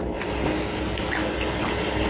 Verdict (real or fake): real